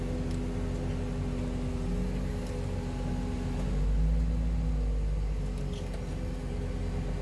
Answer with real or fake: real